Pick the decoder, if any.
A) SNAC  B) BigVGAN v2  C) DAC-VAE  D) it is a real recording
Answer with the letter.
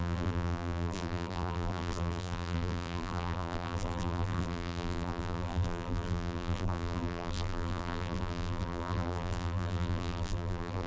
B